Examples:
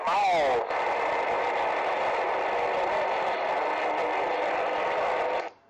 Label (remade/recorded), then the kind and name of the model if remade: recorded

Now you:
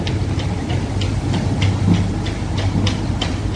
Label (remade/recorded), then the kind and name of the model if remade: recorded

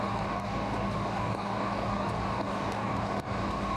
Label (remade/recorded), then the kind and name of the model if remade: remade, codec, DAC